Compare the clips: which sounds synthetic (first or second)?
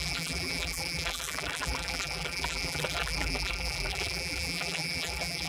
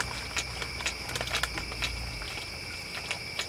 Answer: first